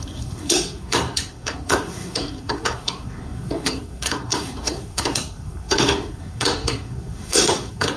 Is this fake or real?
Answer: fake